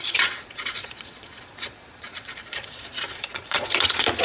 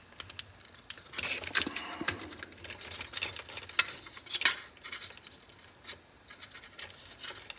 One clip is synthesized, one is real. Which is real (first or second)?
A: second